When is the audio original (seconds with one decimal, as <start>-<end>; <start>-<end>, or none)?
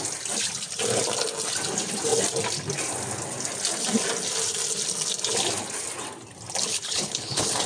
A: 0.0-6.7